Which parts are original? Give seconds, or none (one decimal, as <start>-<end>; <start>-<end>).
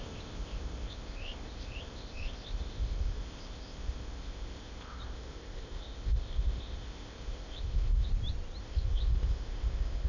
8.1-8.6